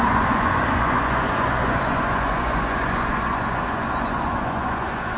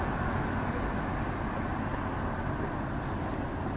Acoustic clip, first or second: second